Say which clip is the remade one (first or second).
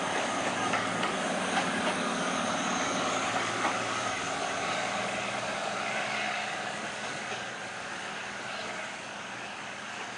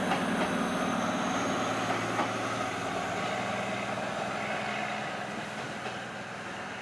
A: first